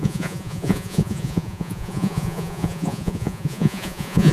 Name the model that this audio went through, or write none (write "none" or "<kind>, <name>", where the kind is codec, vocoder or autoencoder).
vocoder, Vocos